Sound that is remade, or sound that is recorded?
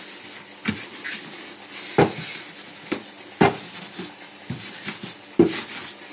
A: recorded